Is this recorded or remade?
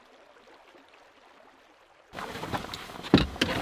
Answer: recorded